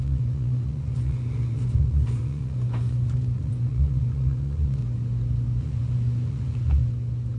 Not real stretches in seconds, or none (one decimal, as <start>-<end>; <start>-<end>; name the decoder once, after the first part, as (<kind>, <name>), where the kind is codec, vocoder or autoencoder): 0.0-4.8 (vocoder, Vocos); 5.6-6.8